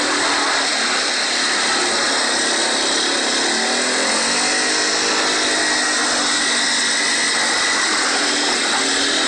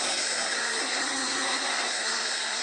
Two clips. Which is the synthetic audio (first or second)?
second